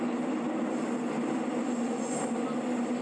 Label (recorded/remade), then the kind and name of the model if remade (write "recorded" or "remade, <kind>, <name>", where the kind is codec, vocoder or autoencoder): recorded